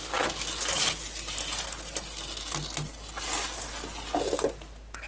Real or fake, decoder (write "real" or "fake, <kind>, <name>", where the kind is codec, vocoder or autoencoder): real